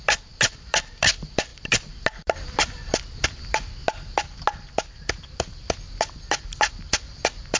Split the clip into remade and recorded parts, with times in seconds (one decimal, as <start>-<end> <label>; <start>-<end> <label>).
0.0-7.6 recorded